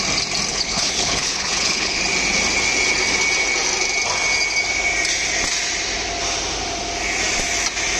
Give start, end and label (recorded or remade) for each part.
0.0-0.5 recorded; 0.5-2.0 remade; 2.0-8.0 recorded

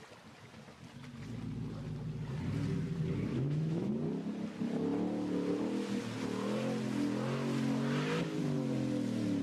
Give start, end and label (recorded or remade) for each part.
0.0-3.3 recorded; 3.3-3.9 remade; 3.9-9.4 recorded

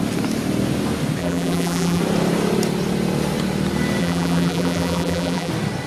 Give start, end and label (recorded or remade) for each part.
0.0-1.2 recorded; 1.2-2.0 remade; 2.0-4.0 recorded; 4.0-5.5 remade; 5.5-5.9 recorded

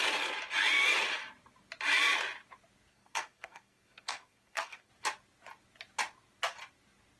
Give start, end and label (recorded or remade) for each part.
0.0-2.9 recorded; 2.9-4.9 remade; 4.9-7.2 recorded

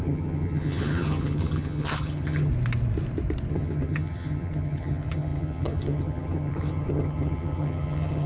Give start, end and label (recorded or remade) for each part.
0.0-2.5 remade; 2.5-3.5 recorded; 3.5-8.3 remade